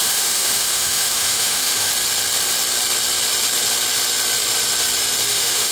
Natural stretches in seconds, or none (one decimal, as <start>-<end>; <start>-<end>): 1.9-5.3